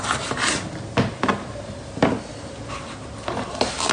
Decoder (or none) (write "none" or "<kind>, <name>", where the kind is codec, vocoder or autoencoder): none